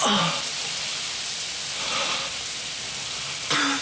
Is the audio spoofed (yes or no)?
no